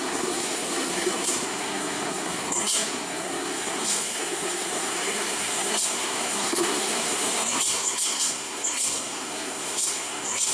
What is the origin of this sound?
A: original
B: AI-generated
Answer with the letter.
B